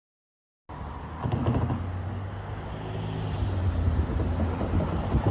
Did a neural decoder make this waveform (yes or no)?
no